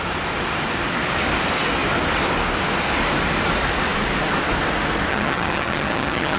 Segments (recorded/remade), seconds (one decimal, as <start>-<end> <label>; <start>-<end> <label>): 0.0-5.1 recorded; 5.1-6.4 remade